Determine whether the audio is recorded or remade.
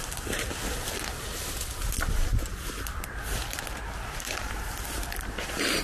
recorded